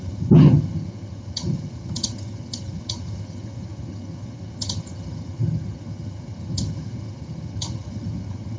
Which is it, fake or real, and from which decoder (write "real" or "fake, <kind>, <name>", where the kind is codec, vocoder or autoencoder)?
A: fake, vocoder, HiFi-GAN